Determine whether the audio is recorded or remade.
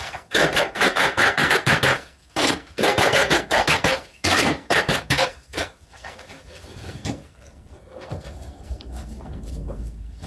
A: remade